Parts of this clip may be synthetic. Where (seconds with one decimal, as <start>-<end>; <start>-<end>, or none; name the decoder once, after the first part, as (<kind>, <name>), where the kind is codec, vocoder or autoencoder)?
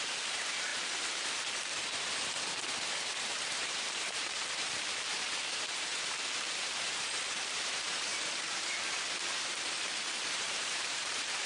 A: 0.0-11.5 (vocoder, BigVGAN v2)